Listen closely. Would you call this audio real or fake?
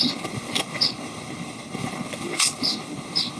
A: fake